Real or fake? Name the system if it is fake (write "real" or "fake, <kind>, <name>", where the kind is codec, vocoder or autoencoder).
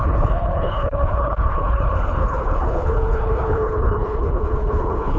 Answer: fake, codec, HILCodec